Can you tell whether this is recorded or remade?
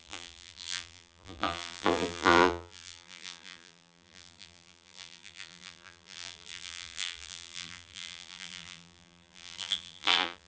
remade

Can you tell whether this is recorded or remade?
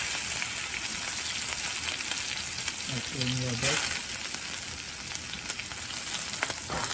recorded